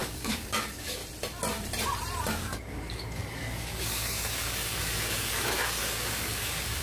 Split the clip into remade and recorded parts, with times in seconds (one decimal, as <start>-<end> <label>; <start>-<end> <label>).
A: 0.0-1.0 remade; 1.0-2.3 recorded; 2.3-6.8 remade